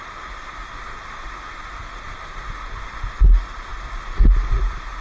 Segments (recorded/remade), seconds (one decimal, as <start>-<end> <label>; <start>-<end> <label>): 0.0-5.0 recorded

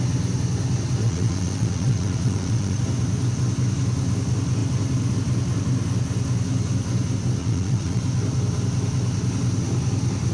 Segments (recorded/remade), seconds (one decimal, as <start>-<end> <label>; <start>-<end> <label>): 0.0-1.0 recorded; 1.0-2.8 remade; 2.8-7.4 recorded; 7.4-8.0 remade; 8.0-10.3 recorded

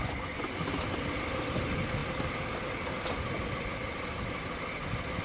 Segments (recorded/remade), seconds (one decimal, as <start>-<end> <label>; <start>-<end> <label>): 0.0-0.5 remade; 0.5-5.2 recorded

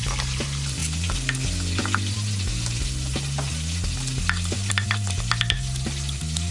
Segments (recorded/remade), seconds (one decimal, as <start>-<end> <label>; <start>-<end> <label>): 0.0-6.5 recorded

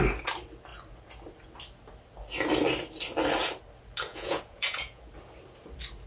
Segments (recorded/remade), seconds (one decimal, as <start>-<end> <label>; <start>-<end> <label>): 0.0-4.1 recorded; 4.1-5.0 remade; 5.0-6.1 recorded

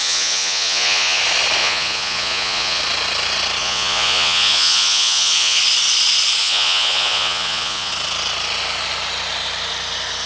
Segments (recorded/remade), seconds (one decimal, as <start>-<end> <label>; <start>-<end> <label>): 0.0-1.2 remade; 1.2-1.6 recorded; 1.6-2.8 remade; 2.8-3.6 recorded; 3.6-5.6 remade; 5.6-6.4 recorded; 6.4-7.9 remade; 7.9-10.3 recorded